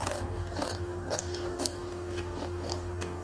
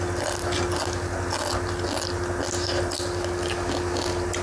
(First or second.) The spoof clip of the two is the first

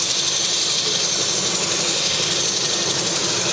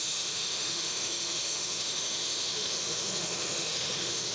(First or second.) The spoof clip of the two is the second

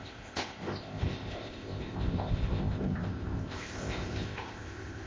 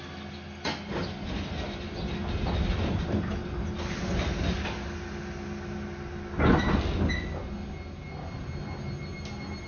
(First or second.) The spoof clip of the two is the first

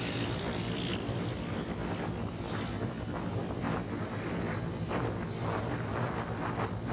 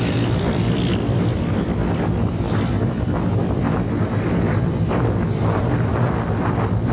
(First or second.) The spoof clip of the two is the second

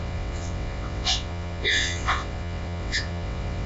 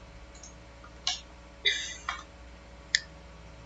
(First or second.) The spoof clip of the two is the first